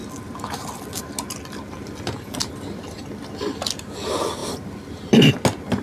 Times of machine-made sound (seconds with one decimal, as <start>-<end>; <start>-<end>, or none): 4.4-5.3